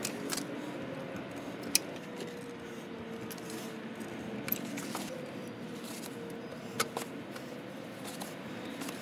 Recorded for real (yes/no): yes